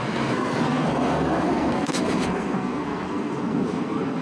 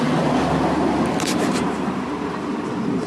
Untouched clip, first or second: second